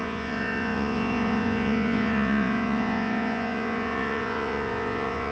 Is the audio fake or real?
fake